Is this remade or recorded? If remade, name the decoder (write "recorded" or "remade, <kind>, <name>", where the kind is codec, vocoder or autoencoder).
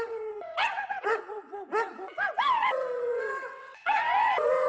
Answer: remade, vocoder, WaveNeXt